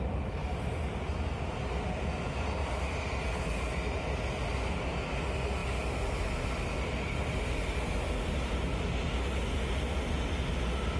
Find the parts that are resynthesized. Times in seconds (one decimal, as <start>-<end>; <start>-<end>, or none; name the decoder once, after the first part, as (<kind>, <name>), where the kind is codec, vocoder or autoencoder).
none